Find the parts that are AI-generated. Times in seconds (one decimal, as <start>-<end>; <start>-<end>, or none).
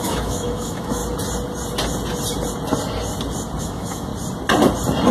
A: 0.0-1.0; 3.6-4.1